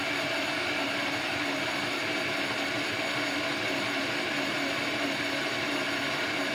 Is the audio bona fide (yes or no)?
yes